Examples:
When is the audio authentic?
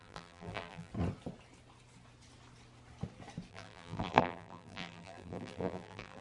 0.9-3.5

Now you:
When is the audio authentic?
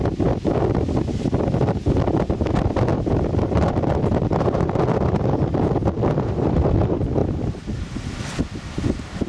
0.0-9.3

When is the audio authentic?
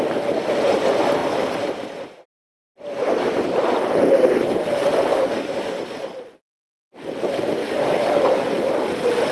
0.0-5.1; 5.8-7.6; 8.7-9.3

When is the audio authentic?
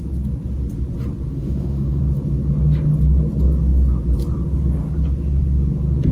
0.0-1.3; 2.0-6.1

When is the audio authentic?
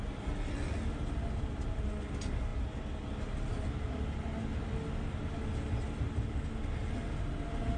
0.0-7.8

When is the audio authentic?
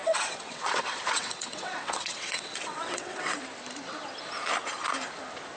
3.4-5.6